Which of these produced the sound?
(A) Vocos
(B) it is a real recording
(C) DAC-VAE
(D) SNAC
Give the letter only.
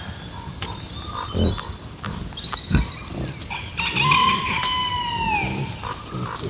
B